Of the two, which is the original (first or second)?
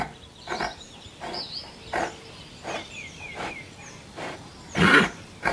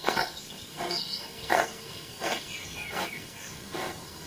first